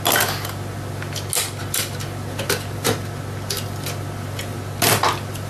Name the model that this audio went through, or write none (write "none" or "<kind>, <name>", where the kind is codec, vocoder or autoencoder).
none